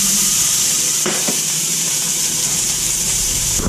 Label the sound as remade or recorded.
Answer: remade